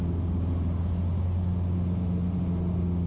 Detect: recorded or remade recorded